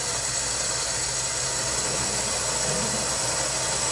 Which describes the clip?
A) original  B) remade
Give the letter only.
A